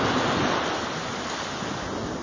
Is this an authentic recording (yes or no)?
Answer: yes